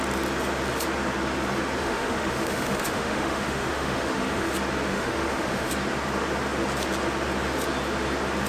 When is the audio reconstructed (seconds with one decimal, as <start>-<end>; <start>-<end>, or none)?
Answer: 1.8-4.5; 4.9-5.7

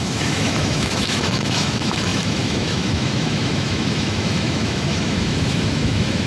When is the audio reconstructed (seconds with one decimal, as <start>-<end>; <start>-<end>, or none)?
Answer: 0.0-6.3